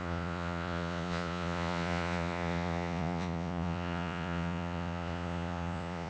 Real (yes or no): no